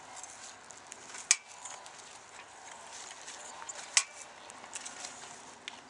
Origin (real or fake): real